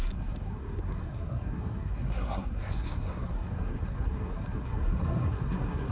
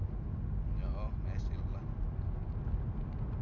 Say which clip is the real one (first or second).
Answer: second